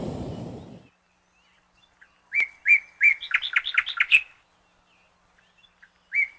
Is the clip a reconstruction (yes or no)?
no